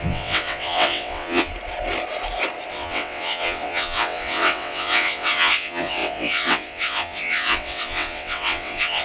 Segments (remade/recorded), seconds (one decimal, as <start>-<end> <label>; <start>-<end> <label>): 0.0-1.5 remade; 1.5-2.7 recorded; 2.7-9.0 remade